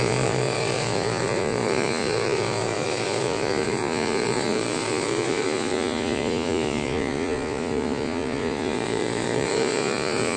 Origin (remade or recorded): remade